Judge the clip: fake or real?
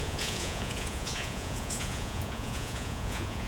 fake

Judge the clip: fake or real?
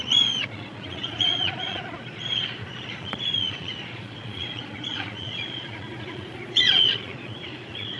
fake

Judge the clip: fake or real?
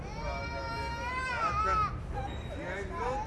real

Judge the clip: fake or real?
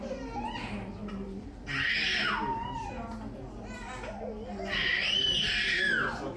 real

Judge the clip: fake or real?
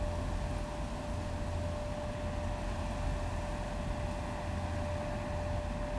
real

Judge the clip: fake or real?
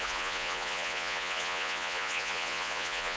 fake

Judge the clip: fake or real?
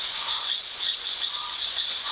fake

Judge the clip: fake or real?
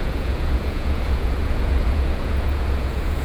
fake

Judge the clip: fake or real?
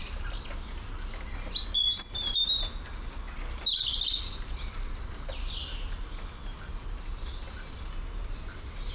real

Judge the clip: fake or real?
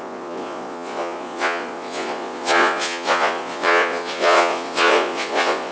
fake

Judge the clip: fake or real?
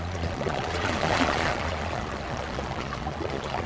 fake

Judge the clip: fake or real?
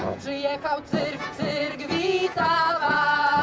fake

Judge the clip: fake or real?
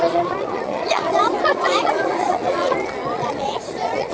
fake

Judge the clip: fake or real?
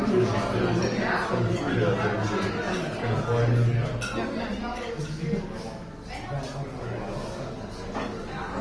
real